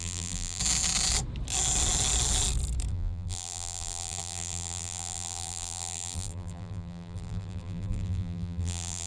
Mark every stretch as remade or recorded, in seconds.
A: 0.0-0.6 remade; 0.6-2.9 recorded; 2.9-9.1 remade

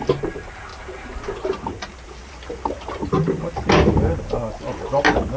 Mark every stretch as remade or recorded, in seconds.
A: 0.0-5.4 recorded

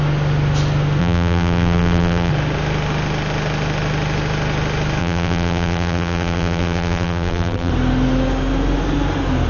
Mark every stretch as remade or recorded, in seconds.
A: 0.0-1.0 recorded; 1.0-2.3 remade; 2.3-5.0 recorded; 5.0-7.7 remade; 7.7-9.5 recorded

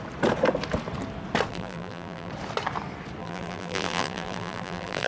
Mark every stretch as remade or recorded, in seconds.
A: 0.0-1.5 recorded; 1.5-2.3 remade; 2.3-3.2 recorded; 3.2-5.1 remade

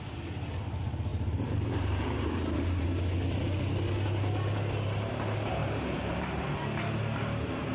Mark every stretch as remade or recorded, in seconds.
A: 0.0-1.1 recorded; 1.1-2.8 remade; 2.8-5.6 recorded; 5.6-6.2 remade; 6.2-7.7 recorded

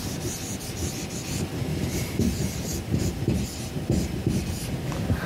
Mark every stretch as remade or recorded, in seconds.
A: 0.0-5.3 recorded